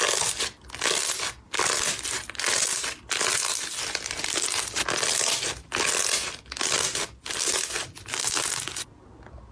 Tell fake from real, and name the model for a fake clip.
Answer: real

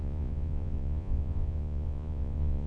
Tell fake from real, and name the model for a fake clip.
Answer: fake, vocoder, Vocos